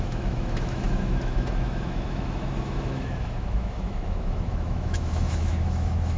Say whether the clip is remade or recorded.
remade